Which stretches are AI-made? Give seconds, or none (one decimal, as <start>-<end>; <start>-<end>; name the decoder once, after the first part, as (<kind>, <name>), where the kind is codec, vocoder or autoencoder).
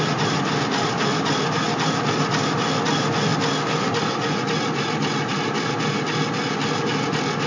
none